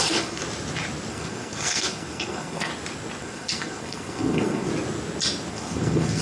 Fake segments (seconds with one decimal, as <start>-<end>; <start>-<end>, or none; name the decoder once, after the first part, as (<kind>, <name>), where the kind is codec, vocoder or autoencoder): 0.0-0.4 (codec, SNAC); 1.1-2.7; 3.2-4.7; 5.5-6.2